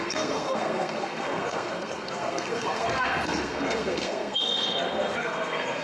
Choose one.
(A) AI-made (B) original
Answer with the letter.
A